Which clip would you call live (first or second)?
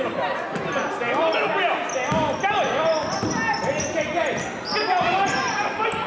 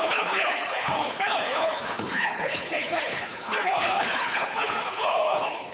first